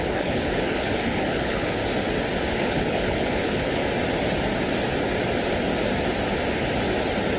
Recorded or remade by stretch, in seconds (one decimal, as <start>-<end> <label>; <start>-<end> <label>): 0.0-1.8 remade; 1.8-2.5 recorded; 2.5-3.8 remade; 3.8-7.4 recorded